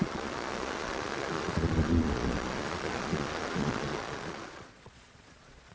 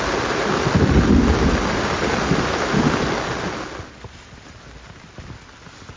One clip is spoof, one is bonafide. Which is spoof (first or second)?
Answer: first